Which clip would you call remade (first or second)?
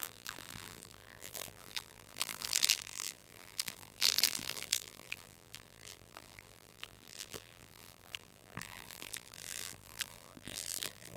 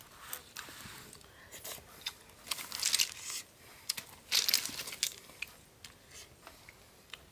first